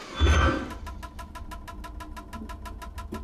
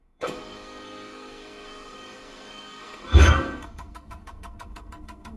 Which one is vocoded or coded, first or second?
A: second